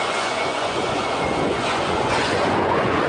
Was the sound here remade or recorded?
remade